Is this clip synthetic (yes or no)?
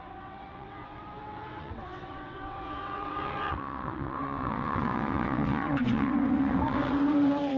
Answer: yes